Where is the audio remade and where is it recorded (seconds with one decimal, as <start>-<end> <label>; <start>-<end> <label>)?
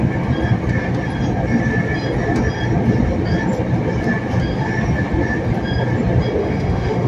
0.0-6.4 recorded; 6.4-7.1 remade